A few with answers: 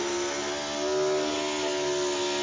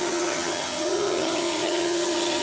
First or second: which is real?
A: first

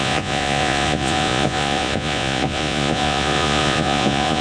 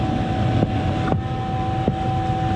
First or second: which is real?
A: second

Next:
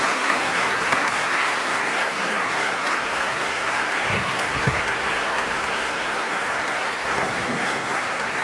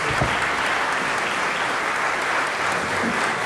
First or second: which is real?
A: second